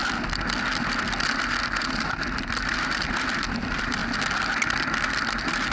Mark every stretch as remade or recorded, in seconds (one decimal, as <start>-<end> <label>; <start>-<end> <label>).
0.0-1.3 recorded; 1.3-4.0 remade; 4.0-5.1 recorded; 5.1-5.7 remade